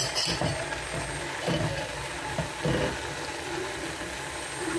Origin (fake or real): real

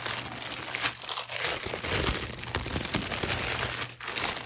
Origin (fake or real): real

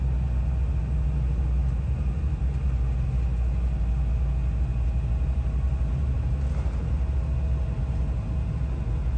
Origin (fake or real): real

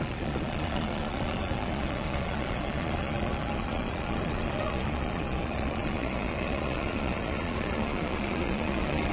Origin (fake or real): fake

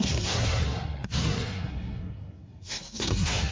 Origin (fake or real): fake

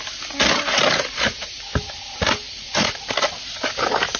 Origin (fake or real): real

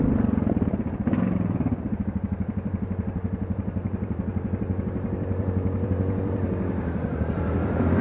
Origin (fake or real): fake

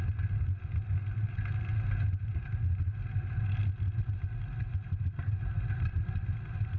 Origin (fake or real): real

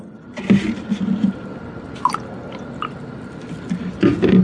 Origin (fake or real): real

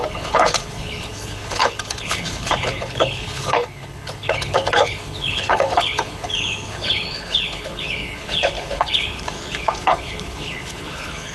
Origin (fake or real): fake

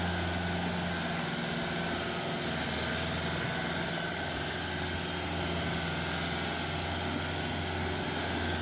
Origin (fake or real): real